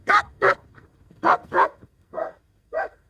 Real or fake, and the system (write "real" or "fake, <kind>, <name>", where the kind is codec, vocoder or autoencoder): fake, codec, SNAC